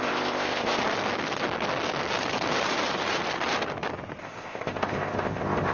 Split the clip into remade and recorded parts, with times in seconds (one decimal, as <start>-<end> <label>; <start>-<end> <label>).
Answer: 0.0-0.8 remade; 0.8-4.2 recorded; 4.2-5.7 remade